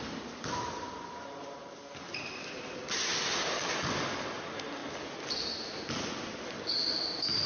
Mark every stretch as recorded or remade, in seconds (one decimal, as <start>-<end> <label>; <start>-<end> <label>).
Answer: 0.0-7.5 recorded